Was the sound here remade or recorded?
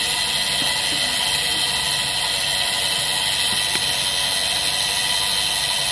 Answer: recorded